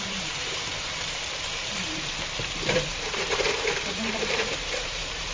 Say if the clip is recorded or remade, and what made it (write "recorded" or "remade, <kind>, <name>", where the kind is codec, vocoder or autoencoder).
remade, vocoder, BigVGAN v2